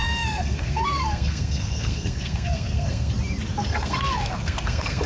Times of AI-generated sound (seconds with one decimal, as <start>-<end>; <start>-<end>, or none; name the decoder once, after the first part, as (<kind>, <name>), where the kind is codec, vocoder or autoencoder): 0.0-3.1 (codec, SNAC); 3.5-5.1